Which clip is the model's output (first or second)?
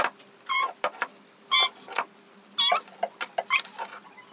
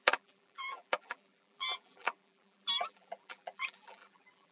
second